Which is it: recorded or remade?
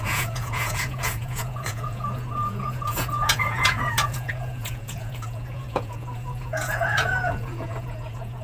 remade